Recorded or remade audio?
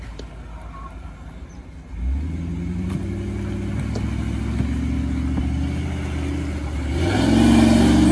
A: recorded